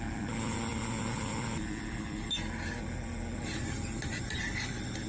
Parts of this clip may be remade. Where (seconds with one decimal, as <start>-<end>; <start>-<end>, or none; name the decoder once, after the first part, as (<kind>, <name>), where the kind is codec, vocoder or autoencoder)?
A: none